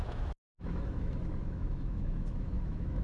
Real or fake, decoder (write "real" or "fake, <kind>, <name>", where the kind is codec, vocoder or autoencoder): fake, autoencoder, DAC-VAE